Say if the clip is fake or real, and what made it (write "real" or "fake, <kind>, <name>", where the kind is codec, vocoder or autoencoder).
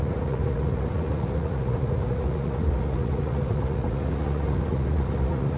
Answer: fake, vocoder, Vocos